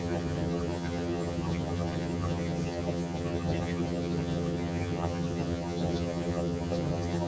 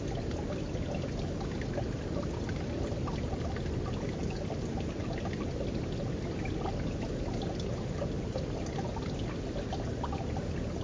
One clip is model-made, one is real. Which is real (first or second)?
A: second